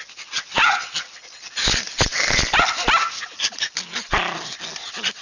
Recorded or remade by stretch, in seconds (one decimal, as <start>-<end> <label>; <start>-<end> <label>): 0.0-5.2 recorded